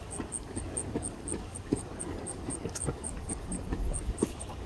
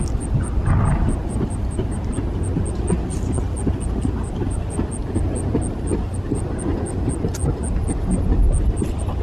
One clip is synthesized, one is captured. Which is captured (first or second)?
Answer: second